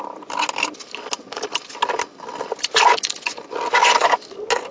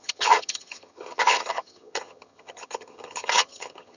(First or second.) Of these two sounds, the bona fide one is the first